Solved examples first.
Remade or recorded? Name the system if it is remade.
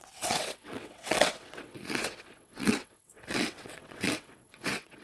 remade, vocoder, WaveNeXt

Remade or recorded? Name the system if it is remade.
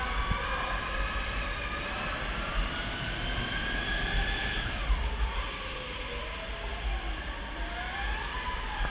recorded